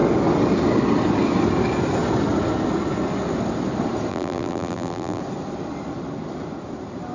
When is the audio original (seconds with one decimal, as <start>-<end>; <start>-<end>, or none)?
0.0-4.1; 5.2-7.1

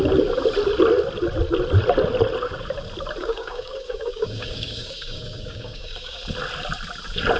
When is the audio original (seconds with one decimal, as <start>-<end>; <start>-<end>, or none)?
0.0-3.2; 6.2-7.4